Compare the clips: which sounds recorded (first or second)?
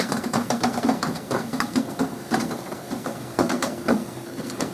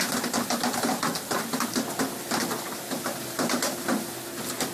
second